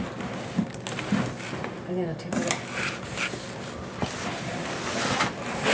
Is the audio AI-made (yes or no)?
no